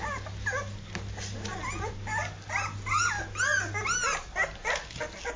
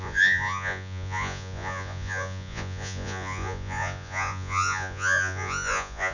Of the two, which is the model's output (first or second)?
second